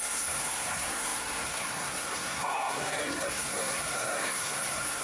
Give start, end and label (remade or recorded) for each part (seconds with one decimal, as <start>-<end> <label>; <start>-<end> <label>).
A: 0.0-5.0 remade